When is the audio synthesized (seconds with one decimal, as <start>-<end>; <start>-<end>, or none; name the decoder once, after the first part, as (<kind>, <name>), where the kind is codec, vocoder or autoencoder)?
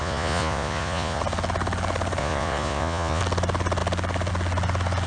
0.0-1.2 (vocoder, Vocos); 2.2-3.2